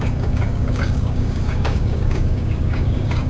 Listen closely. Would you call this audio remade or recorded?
remade